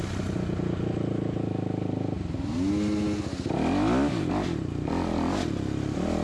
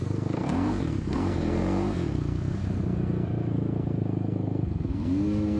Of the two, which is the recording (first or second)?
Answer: first